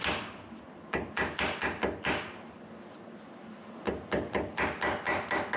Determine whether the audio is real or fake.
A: real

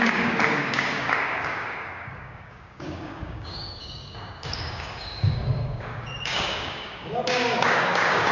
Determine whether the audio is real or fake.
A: fake